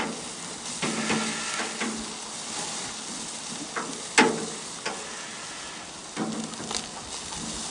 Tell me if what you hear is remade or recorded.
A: recorded